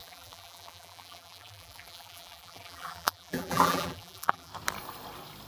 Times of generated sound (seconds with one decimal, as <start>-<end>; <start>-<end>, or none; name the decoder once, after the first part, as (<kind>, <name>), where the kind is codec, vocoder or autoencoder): 0.0-4.5 (vocoder, BigVGAN v2)